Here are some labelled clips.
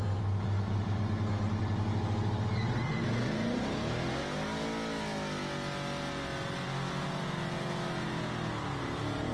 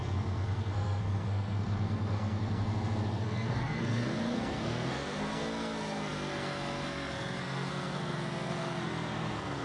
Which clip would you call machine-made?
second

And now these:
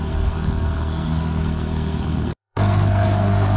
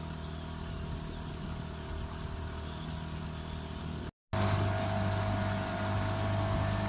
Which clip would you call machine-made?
first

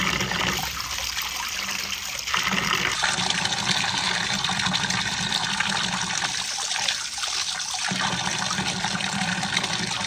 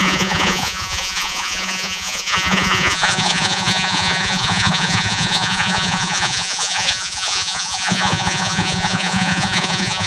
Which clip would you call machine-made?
second